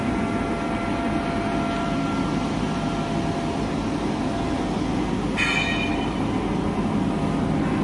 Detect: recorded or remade recorded